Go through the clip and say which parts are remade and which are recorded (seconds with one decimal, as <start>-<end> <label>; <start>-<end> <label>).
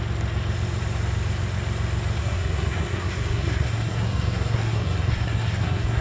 0.0-2.2 recorded; 2.2-6.0 remade